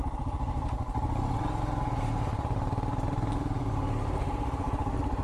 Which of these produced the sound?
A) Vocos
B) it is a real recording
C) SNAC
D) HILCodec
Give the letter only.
B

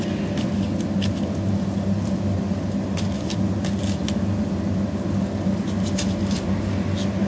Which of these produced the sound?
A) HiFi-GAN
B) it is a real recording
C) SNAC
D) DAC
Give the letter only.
B